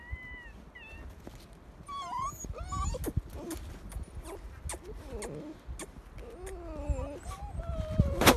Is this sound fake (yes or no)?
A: no